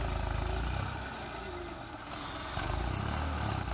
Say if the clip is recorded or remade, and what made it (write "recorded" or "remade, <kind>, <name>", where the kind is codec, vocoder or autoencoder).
recorded